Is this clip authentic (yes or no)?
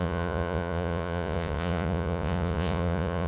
no